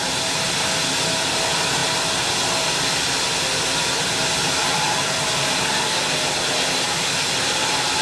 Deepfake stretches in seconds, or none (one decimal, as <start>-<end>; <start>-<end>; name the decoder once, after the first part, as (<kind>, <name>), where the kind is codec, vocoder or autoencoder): none